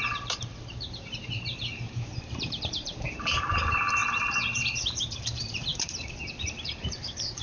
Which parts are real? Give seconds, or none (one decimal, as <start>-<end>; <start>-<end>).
none